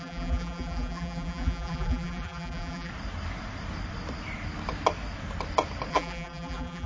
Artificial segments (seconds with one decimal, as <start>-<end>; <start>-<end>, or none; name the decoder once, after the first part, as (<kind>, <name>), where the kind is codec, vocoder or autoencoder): 0.0-2.9 (vocoder, BigVGAN v2); 5.9-6.9